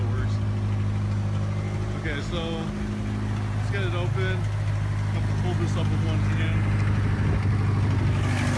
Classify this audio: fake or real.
real